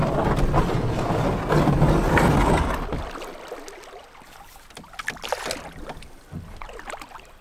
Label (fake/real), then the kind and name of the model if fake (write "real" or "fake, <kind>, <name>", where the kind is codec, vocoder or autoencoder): real